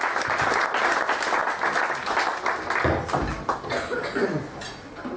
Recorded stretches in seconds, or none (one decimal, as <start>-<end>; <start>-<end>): 0.0-5.2